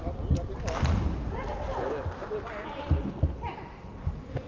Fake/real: real